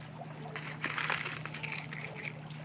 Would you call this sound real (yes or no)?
yes